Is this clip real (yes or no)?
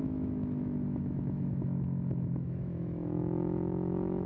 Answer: no